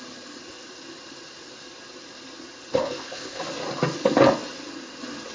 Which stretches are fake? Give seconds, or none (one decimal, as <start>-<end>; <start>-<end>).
2.8-3.4